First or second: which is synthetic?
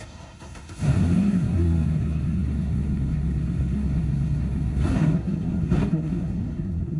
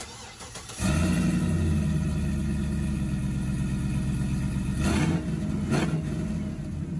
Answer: first